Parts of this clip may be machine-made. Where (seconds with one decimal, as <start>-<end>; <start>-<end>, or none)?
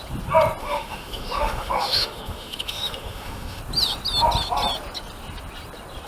0.6-3.6